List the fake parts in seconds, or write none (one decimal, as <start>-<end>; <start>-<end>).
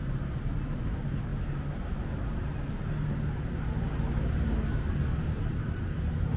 0.0-1.3; 5.1-6.4